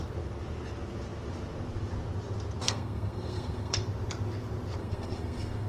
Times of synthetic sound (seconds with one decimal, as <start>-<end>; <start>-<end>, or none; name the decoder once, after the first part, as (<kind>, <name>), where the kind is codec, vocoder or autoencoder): 2.6-3.8 (codec, SNAC); 4.8-5.7